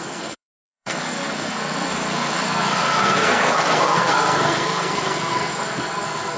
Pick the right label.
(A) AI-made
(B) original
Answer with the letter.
A